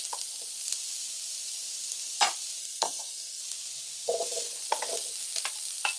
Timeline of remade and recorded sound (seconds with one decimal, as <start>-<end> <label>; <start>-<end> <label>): 0.0-2.6 recorded; 2.6-3.4 remade; 3.4-6.0 recorded